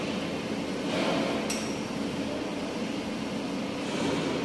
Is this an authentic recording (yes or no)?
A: yes